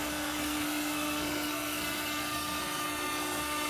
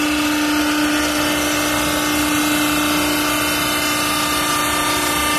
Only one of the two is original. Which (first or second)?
second